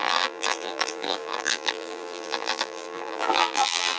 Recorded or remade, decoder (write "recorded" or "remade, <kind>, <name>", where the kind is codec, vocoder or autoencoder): remade, vocoder, BigVGAN v2